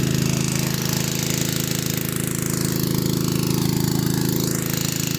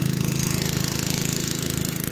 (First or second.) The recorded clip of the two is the first